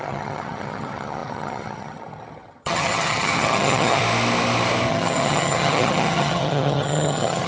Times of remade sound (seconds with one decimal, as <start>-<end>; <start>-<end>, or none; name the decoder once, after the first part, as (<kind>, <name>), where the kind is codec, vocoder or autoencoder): 0.0-4.0 (vocoder, HiFi-GAN); 4.9-7.5